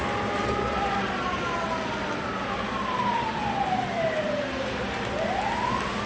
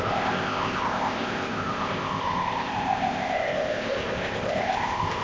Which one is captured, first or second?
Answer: first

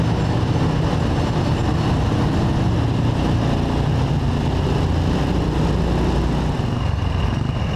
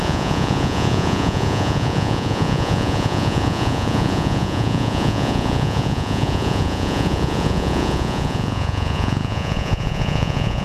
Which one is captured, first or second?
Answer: first